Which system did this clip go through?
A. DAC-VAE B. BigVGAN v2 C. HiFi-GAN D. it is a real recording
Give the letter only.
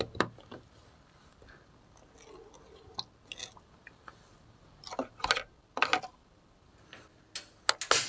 D